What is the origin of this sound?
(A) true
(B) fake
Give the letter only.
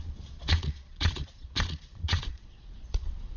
B